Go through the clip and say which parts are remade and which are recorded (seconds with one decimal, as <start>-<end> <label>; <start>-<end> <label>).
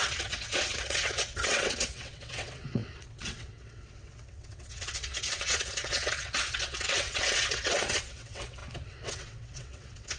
0.0-10.2 remade